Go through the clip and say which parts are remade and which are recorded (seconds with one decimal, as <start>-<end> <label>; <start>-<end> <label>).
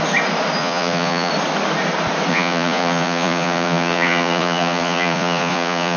0.0-0.6 recorded; 0.6-1.3 remade; 1.3-2.3 recorded; 2.3-6.0 remade